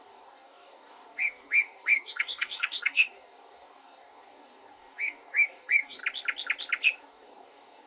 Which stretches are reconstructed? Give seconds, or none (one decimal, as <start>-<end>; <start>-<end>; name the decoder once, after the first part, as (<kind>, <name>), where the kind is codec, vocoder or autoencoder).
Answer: 0.0-6.0 (codec, DAC); 7.0-7.9